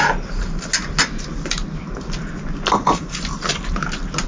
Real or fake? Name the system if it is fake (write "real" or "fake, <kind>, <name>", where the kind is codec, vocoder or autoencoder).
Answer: real